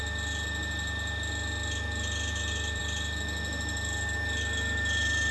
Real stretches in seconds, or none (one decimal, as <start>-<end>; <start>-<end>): 0.0-5.3

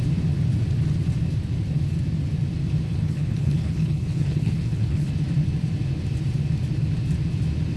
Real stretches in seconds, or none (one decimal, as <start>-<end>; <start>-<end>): 0.0-2.9; 5.1-7.8